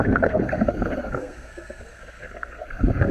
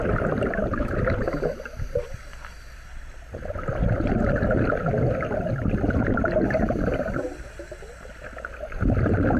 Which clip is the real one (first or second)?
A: second